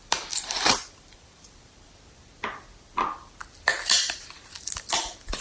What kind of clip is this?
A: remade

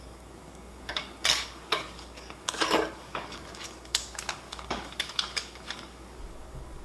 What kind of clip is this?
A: remade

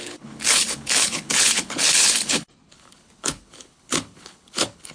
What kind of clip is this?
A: remade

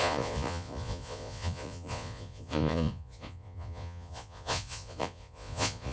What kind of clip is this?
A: remade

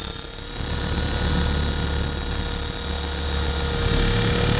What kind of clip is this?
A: recorded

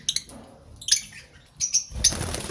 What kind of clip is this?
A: recorded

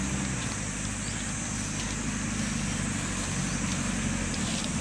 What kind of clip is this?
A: recorded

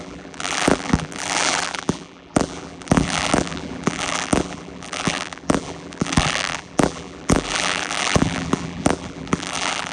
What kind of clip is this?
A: remade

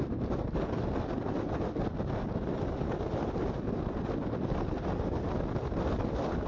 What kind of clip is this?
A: recorded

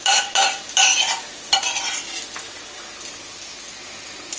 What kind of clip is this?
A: recorded